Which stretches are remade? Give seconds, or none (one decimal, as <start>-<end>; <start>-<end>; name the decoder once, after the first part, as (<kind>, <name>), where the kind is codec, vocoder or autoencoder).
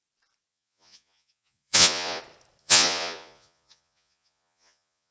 0.5-2.2 (vocoder, Vocos); 2.6-5.1